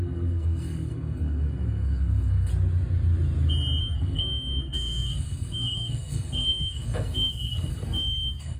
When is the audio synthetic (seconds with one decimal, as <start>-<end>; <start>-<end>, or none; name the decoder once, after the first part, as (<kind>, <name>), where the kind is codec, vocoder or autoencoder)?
0.0-2.5 (codec, SNAC); 3.8-8.6